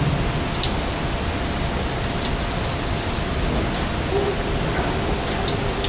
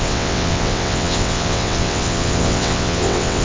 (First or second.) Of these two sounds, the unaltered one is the first